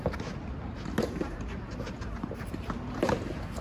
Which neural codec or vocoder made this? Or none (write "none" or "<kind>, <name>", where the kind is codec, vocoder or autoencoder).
none